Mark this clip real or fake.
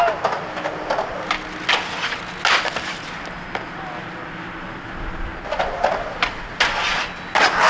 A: real